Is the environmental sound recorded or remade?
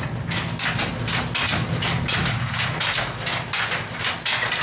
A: recorded